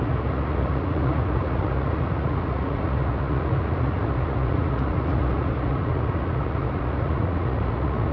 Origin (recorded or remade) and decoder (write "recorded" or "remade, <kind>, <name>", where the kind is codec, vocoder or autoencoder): remade, vocoder, Vocos